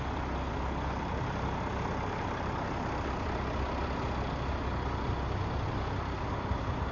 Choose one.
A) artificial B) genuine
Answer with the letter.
B